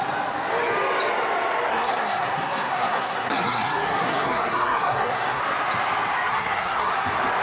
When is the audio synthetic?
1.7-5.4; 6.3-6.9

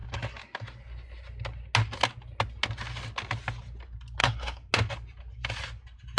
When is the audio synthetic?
4.2-4.7

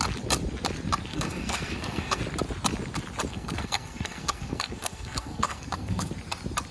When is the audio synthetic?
1.1-2.2; 3.3-6.1

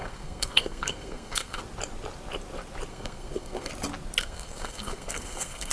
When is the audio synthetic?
0.0-1.6; 2.9-3.7; 4.2-5.7

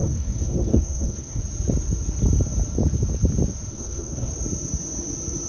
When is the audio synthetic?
0.0-1.4; 3.7-4.3

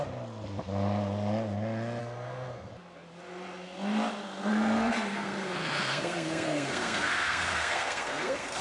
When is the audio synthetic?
2.0-2.7; 4.5-8.6